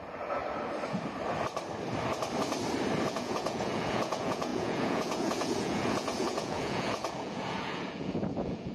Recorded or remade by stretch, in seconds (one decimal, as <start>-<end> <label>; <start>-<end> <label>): 0.0-0.4 remade; 0.4-3.1 recorded; 3.1-8.7 remade